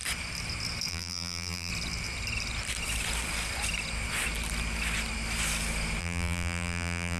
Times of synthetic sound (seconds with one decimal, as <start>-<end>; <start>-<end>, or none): 0.9-1.7; 6.0-7.2